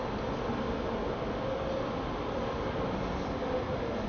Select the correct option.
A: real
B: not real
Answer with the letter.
A